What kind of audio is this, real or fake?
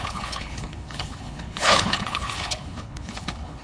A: fake